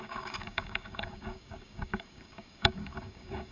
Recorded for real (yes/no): no